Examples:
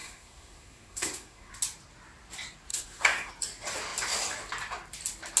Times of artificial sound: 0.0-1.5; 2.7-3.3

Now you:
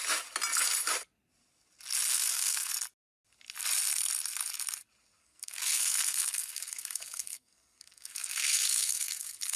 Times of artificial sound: 2.1-2.7; 5.2-9.6

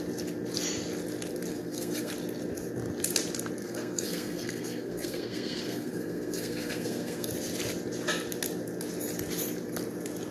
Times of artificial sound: 1.5-2.1; 3.6-7.3

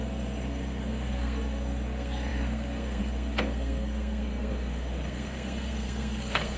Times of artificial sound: 0.0-6.6

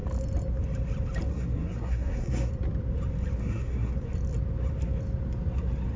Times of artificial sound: 1.3-2.5; 3.4-3.9